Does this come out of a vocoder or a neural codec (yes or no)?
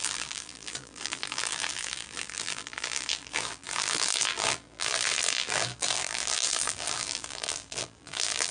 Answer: yes